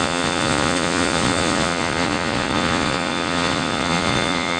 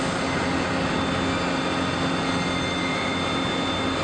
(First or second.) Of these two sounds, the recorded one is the second